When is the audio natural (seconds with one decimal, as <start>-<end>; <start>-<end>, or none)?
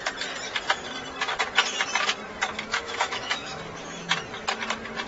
0.0-2.7; 3.6-5.1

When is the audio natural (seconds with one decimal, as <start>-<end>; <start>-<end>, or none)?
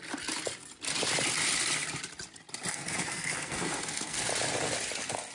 0.0-2.7; 4.3-5.3